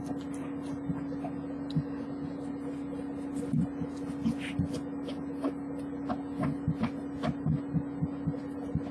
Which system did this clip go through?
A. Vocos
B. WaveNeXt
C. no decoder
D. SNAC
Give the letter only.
C